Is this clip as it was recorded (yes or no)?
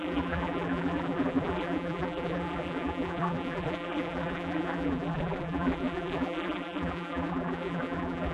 no